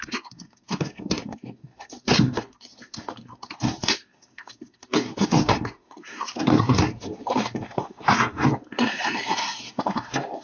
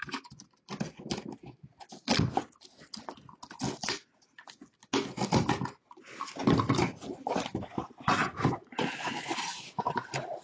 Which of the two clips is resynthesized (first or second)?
first